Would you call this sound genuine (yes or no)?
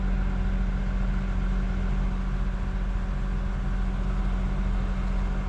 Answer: yes